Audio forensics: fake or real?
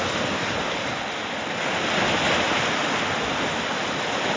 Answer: real